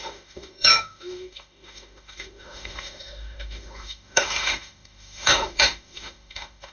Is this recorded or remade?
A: remade